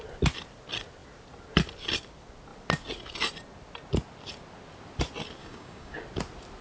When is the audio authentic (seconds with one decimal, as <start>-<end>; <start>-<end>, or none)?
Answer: 0.0-5.4; 6.0-6.6